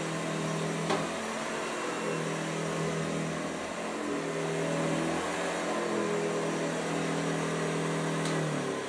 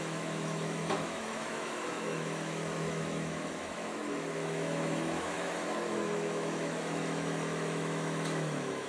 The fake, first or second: second